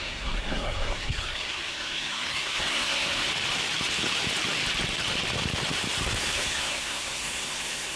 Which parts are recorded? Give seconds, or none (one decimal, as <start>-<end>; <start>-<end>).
3.3-6.2